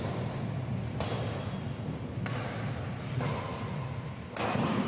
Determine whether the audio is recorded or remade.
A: recorded